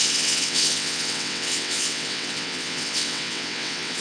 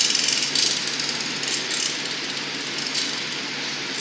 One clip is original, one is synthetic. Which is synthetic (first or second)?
first